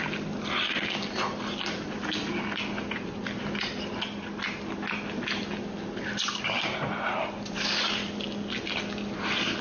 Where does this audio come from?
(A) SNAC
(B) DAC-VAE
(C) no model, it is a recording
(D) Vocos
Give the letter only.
C